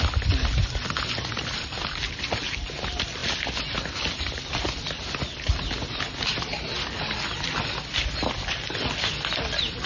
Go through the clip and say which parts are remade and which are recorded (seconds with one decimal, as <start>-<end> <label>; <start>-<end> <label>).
0.0-9.9 recorded